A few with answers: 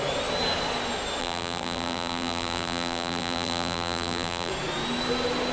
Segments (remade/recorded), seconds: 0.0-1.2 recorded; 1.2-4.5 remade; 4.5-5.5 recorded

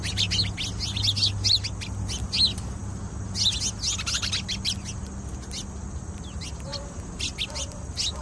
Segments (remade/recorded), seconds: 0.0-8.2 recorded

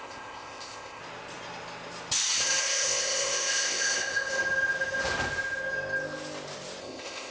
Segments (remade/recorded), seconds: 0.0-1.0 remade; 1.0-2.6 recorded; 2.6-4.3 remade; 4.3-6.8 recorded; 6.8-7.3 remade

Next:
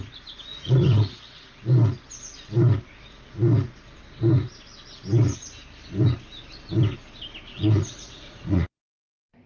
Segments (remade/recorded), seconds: 0.0-0.5 recorded; 0.5-1.5 remade; 1.5-7.5 recorded; 7.5-8.8 remade; 8.8-9.5 recorded